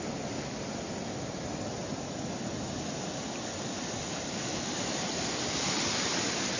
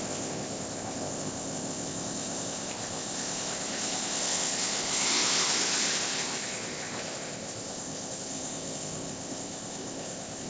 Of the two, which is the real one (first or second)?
first